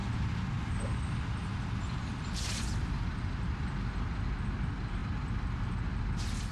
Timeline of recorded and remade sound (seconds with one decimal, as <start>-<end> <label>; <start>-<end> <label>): 0.0-3.9 remade; 3.9-5.0 recorded; 5.0-6.0 remade; 6.0-6.5 recorded